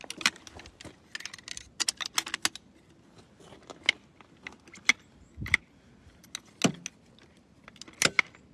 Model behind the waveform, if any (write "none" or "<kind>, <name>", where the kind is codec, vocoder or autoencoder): none